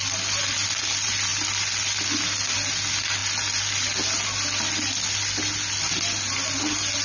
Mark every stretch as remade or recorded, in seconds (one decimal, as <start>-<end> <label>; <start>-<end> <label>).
0.0-7.0 recorded